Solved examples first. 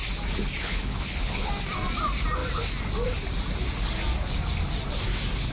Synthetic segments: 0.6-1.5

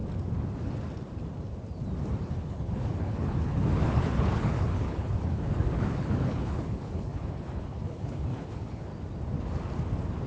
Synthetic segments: 2.2-8.9

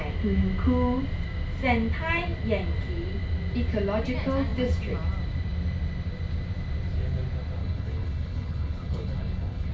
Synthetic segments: 7.6-9.7

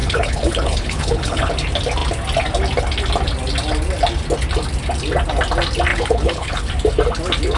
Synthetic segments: 0.0-1.5; 5.9-6.7

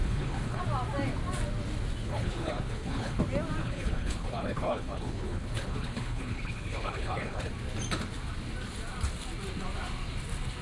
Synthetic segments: 0.0-0.6; 2.0-3.2; 3.6-7.5

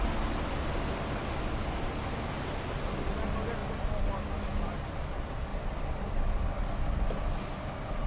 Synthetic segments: none

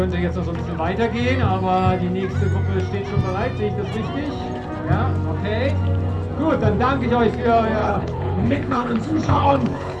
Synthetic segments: 7.8-10.0